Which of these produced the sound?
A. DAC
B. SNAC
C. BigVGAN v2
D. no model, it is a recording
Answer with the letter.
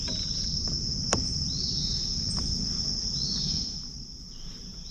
D